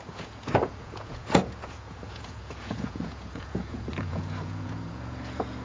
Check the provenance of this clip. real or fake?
fake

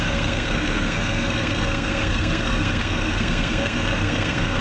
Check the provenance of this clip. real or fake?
fake